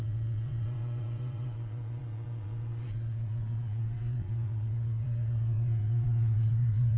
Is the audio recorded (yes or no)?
no